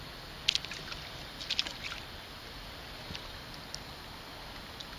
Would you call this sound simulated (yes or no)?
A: no